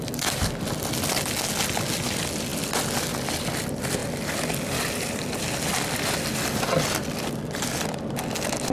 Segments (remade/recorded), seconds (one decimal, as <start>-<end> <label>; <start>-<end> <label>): 0.0-8.7 recorded